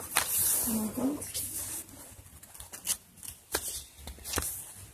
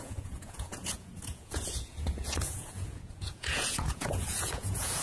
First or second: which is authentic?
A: first